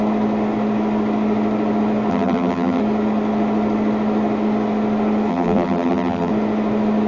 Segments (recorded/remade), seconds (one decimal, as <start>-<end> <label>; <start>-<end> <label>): 0.0-2.1 recorded; 2.1-2.8 remade; 2.8-5.3 recorded; 5.3-6.3 remade; 6.3-7.1 recorded